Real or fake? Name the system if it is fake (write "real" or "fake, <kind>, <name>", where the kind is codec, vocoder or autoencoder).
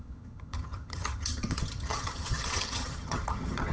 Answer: fake, vocoder, HiFi-GAN